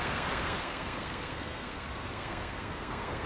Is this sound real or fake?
fake